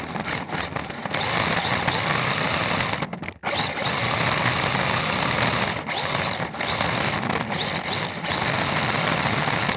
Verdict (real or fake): real